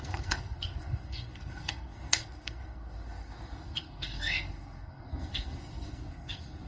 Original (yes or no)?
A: no